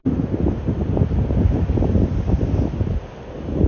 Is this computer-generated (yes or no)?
no